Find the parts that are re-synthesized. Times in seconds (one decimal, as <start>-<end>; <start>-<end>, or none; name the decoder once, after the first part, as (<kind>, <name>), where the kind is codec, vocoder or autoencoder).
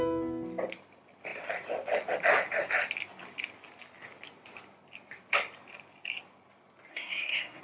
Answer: 6.9-7.6 (codec, SNAC)